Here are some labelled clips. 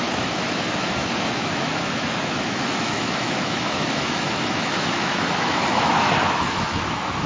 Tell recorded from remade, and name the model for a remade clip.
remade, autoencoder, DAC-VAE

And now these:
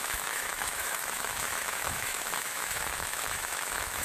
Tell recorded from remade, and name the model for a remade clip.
remade, autoencoder, DAC-VAE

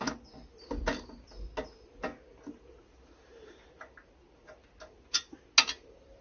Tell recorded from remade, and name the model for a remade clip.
recorded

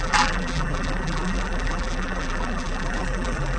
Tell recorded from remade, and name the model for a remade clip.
remade, vocoder, BigVGAN v2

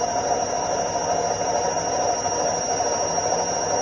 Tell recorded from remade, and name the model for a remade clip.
recorded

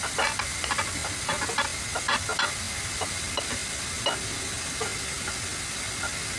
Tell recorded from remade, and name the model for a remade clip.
recorded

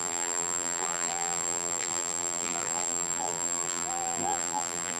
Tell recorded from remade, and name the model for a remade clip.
remade, vocoder, BigVGAN v2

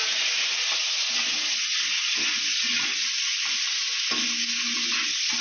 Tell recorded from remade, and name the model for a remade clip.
recorded